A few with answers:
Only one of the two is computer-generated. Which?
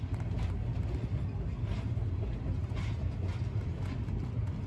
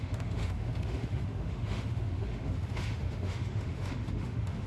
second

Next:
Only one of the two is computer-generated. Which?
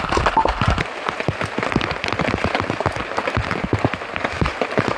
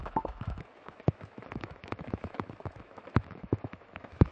second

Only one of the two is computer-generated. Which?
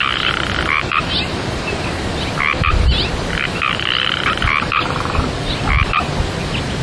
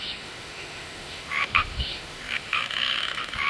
second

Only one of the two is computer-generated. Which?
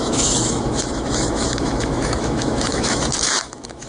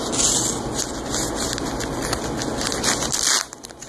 first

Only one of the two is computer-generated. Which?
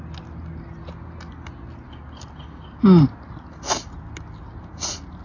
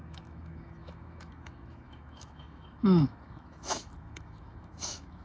second